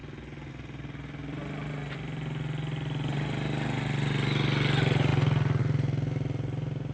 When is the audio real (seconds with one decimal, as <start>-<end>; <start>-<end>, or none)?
0.0-6.9